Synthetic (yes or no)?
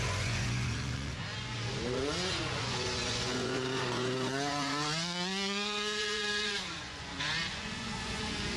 yes